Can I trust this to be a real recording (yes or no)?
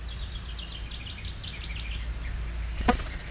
yes